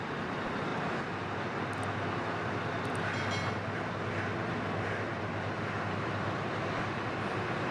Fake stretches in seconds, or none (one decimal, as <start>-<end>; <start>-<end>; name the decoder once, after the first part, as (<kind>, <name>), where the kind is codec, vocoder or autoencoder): none